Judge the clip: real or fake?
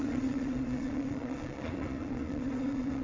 fake